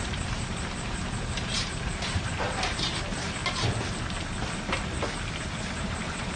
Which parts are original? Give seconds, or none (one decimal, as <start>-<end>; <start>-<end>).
3.4-5.6